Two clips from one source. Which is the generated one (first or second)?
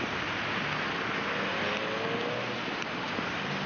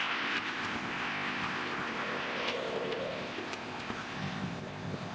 second